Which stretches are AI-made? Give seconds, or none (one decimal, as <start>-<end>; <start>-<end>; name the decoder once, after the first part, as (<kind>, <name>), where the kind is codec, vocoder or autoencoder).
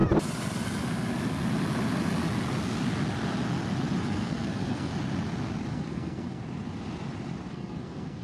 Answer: 4.0-4.9 (codec, SNAC); 5.7-6.4; 7.5-8.2